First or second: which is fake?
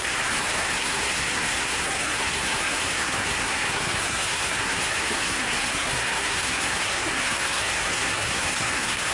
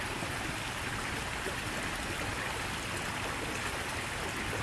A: first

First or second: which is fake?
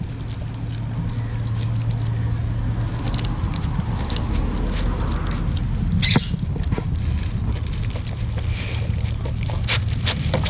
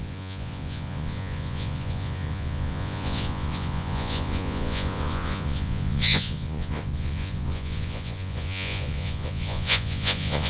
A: second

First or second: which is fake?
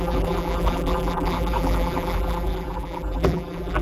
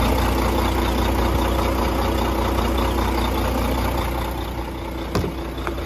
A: first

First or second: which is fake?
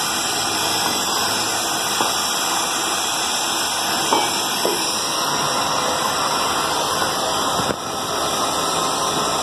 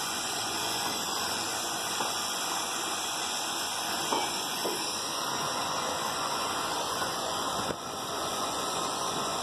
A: second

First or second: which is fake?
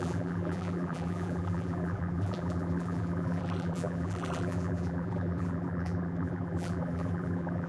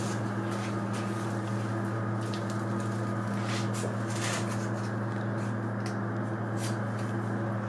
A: first